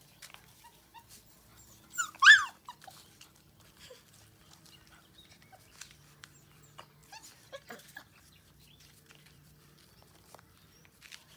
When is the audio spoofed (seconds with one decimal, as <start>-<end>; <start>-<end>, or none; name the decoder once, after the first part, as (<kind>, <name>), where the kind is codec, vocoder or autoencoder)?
0.0-11.4 (vocoder, BigVGAN v2)